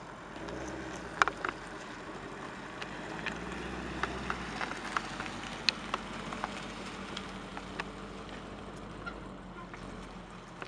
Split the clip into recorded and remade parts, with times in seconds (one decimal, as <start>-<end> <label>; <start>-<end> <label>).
0.0-10.7 recorded